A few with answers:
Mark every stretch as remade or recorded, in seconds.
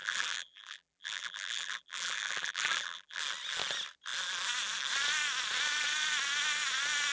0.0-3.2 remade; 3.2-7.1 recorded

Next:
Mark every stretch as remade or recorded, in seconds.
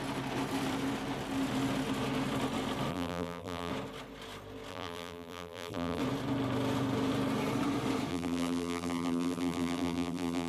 0.0-2.9 recorded; 2.9-3.7 remade; 3.7-4.7 recorded; 4.7-6.0 remade; 6.0-8.1 recorded; 8.1-10.5 remade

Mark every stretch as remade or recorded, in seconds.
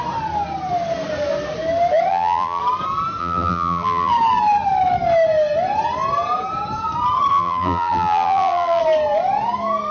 0.0-2.1 recorded; 2.1-2.6 remade; 2.6-3.2 recorded; 3.2-4.1 remade; 4.1-7.3 recorded; 7.3-8.8 remade; 8.8-9.9 recorded